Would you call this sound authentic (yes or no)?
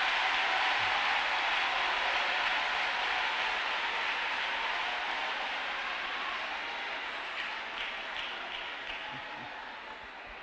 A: yes